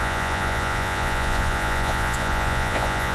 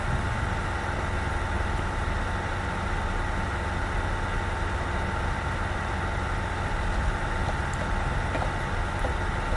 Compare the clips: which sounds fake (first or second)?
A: first